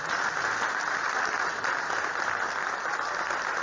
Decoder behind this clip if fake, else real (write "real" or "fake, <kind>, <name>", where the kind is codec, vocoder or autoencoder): real